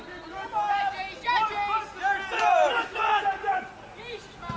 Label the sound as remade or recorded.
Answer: recorded